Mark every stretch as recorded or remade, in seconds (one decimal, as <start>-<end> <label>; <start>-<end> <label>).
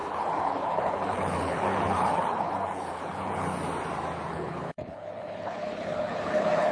0.0-3.5 remade; 3.5-4.3 recorded; 4.3-6.7 remade